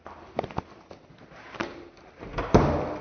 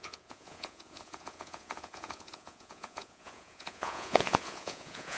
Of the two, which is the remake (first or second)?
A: second